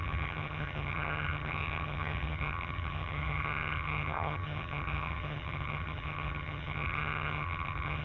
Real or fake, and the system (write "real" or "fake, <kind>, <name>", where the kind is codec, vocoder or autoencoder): fake, vocoder, HiFi-GAN